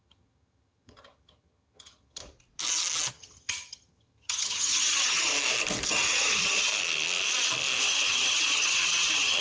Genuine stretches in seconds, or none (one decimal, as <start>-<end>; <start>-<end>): 2.2-3.1; 5.3-5.9; 6.7-7.8